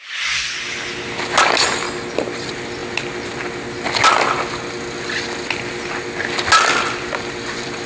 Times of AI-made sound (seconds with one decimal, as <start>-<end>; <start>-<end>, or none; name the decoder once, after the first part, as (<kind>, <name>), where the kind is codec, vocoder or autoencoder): none